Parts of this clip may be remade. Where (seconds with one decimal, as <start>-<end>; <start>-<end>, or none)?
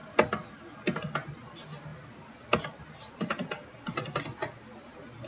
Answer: none